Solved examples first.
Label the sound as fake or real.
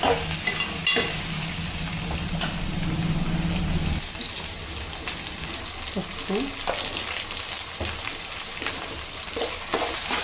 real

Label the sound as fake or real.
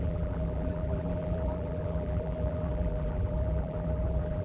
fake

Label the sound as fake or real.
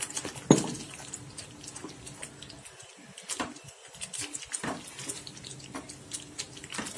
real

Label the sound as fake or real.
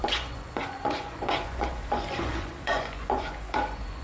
fake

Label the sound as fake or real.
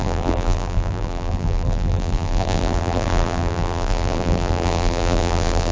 fake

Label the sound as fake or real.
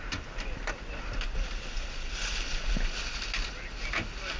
real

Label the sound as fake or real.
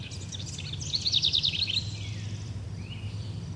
real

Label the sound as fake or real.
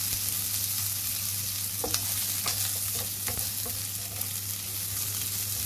real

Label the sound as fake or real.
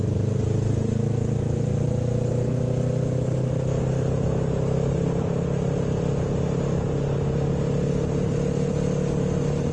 real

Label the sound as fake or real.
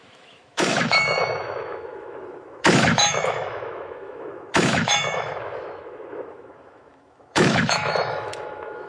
fake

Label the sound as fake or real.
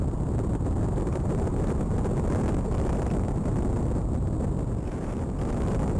real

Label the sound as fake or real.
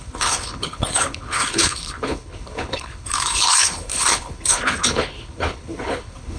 fake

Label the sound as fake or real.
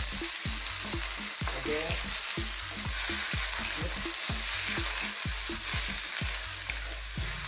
real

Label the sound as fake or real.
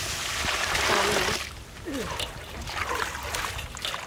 real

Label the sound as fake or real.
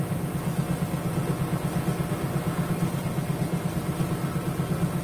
real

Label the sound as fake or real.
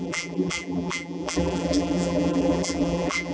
fake